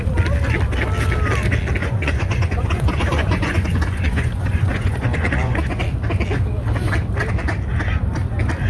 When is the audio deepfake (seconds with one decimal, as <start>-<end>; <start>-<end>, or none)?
1.8-5.8